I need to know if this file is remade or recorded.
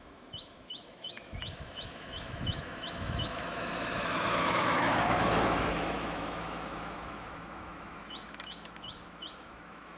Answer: remade